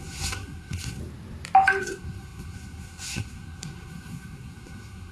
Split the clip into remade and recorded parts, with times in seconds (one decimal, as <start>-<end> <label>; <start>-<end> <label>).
0.0-1.0 remade; 1.0-1.8 recorded; 1.8-5.1 remade